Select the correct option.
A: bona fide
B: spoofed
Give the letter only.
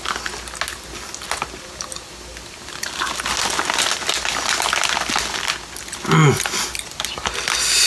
A